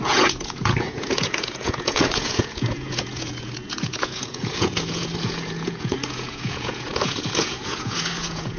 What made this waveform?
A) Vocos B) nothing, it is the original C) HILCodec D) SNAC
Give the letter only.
A